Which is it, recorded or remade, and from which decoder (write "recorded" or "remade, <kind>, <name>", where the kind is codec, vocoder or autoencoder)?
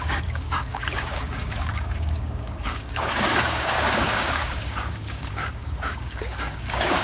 remade, codec, DAC